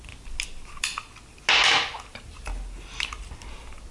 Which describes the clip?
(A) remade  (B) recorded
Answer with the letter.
B